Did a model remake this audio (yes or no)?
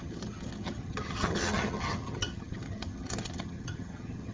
yes